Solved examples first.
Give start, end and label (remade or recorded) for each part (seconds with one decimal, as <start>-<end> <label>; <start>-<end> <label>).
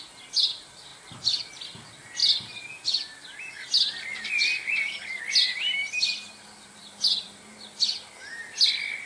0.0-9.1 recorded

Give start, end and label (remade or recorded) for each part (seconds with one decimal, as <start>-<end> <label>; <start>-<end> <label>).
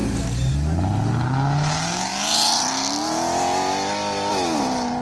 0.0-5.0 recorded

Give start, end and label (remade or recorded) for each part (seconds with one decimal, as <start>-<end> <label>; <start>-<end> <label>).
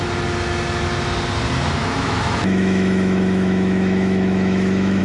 0.0-1.8 recorded; 1.8-5.0 remade